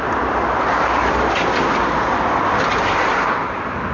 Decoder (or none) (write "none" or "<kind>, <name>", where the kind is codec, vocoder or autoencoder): none